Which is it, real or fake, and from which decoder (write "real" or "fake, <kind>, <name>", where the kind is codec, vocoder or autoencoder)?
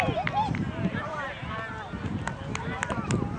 real